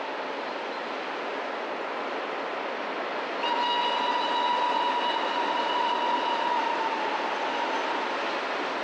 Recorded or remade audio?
recorded